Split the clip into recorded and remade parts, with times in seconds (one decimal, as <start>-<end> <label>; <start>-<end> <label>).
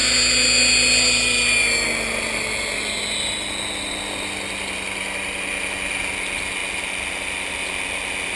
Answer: 0.0-8.4 recorded